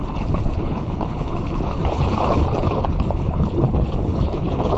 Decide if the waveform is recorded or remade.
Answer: remade